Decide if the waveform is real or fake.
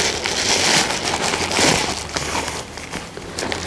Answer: real